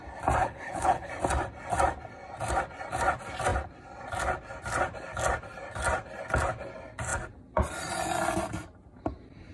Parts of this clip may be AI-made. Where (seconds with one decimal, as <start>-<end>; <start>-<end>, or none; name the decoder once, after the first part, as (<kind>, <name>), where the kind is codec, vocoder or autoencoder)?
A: 0.4-1.1 (codec, HILCodec)